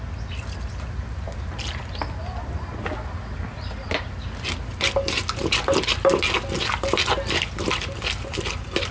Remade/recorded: recorded